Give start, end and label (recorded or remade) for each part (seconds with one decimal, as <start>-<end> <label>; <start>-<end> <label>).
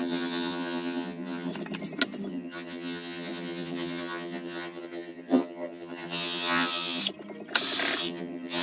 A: 0.0-1.5 remade; 1.5-2.3 recorded; 2.3-7.0 remade; 7.0-8.0 recorded; 8.0-8.6 remade